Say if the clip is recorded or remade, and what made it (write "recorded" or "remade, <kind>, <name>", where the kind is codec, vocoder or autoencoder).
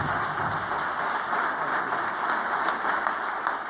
recorded